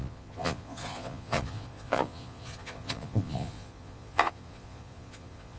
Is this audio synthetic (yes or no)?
yes